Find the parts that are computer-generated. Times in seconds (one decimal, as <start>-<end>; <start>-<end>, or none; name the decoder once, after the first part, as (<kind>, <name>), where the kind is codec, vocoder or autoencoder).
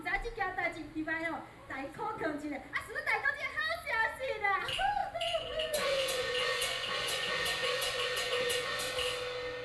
1.6-3.3 (vocoder, Vocos); 5.0-8.8